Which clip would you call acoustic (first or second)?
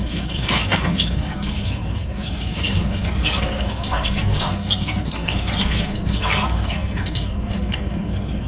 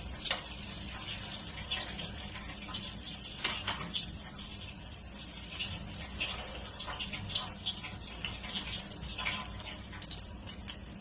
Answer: second